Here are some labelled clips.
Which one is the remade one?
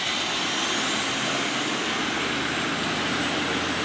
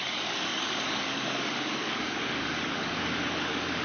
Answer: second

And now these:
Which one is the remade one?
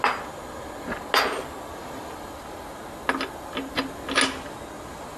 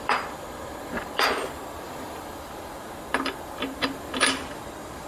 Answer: second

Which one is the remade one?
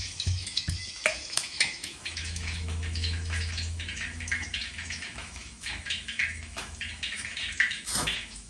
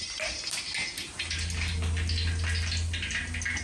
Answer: first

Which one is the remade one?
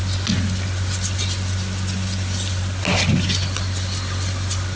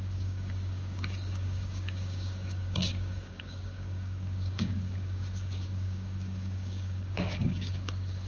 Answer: second